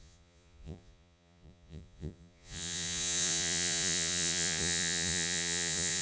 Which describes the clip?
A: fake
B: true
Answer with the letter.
A